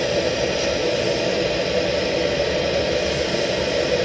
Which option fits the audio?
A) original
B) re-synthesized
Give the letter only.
A